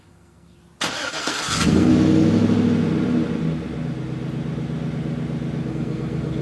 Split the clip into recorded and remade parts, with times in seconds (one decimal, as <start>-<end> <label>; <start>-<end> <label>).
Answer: 0.0-0.6 remade; 0.6-1.1 recorded; 1.1-1.9 remade; 1.9-5.7 recorded; 5.7-6.4 remade